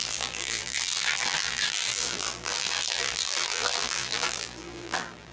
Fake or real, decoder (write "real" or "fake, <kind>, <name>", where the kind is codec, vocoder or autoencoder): fake, vocoder, BigVGAN v2